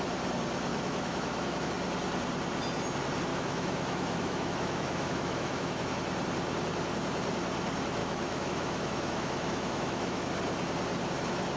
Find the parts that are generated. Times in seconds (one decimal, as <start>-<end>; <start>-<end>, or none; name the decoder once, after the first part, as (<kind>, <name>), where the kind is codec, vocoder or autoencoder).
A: 0.7-1.7 (autoencoder, DAC-VAE); 3.3-5.9; 8.0-10.3